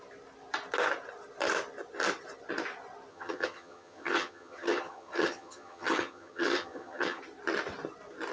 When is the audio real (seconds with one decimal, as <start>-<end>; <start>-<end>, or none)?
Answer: 0.0-3.1; 7.2-8.3